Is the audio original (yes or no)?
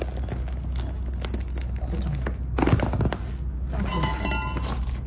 yes